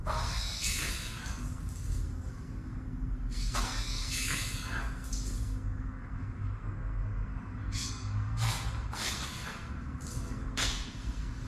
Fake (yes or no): yes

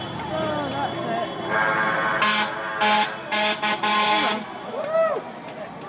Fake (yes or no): no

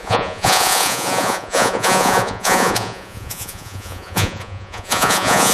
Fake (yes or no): yes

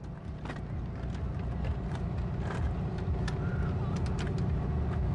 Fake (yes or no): no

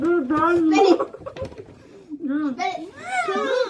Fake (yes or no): yes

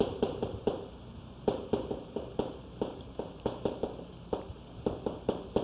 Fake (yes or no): yes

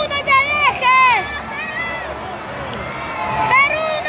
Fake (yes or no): no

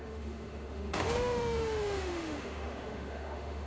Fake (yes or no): yes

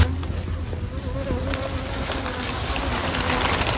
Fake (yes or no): no